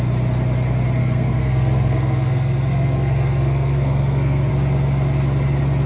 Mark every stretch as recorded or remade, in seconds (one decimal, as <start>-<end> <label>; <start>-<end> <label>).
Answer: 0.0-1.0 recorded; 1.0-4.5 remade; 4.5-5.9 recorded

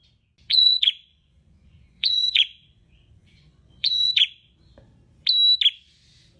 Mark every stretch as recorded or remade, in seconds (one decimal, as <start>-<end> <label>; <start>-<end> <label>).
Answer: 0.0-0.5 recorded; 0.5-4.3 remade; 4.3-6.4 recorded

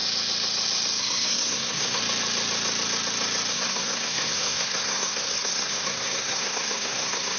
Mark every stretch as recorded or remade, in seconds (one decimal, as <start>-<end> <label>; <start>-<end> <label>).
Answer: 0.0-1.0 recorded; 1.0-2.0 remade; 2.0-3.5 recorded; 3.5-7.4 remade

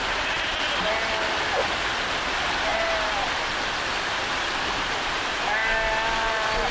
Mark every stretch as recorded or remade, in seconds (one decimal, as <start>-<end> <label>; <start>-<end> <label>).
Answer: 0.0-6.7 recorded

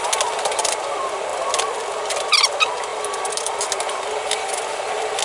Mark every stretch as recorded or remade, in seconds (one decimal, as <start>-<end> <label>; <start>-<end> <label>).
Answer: 0.0-5.2 recorded

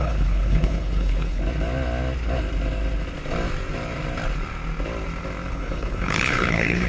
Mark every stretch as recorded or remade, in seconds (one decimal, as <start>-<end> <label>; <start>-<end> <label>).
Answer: 0.0-1.4 remade; 1.4-5.5 recorded; 5.5-6.9 remade

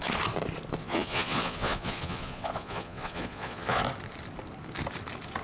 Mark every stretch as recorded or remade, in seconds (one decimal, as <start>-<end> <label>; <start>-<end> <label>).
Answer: 0.0-0.8 recorded; 0.8-3.8 remade; 3.8-5.4 recorded